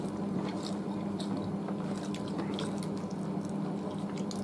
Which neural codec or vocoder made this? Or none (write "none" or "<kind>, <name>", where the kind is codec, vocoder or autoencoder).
none